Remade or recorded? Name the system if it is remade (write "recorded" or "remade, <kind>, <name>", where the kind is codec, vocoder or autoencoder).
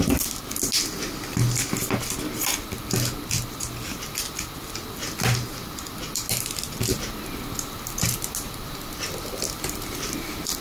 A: recorded